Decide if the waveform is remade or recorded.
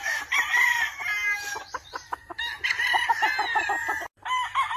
recorded